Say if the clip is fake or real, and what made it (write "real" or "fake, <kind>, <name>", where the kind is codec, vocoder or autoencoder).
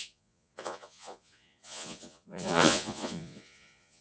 fake, vocoder, Vocos